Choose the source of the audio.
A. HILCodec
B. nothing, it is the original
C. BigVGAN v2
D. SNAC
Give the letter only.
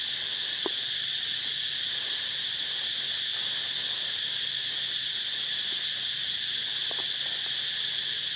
B